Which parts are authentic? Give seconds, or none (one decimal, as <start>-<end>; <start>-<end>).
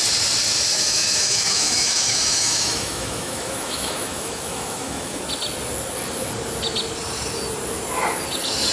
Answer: 0.0-0.7; 5.2-8.7